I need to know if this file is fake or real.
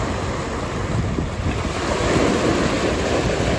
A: real